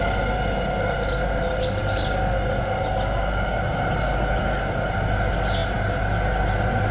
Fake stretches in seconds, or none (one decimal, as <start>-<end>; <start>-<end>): none